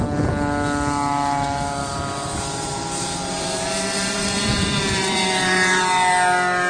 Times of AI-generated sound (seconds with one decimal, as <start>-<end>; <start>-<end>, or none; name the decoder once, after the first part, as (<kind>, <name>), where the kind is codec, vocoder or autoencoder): 1.8-5.8 (vocoder, BigVGAN v2)